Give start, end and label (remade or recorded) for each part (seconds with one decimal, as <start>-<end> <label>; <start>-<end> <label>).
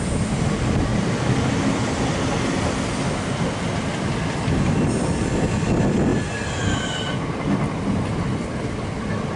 0.0-9.4 recorded